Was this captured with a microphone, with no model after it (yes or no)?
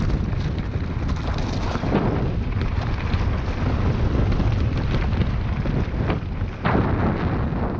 yes